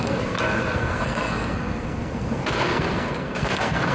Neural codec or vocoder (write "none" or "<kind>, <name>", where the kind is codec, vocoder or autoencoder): codec, SNAC